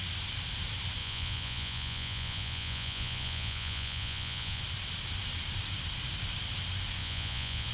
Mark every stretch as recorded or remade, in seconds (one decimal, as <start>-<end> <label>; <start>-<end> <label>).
0.0-1.0 recorded; 1.0-4.6 remade; 4.6-7.0 recorded; 7.0-7.7 remade